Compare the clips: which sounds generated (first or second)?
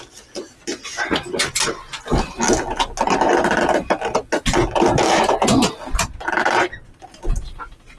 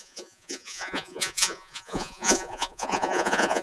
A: second